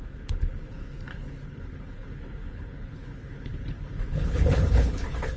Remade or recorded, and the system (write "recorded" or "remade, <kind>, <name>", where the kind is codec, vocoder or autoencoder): remade, codec, HILCodec